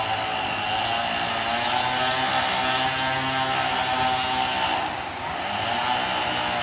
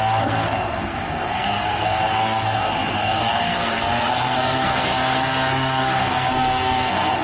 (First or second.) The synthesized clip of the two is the second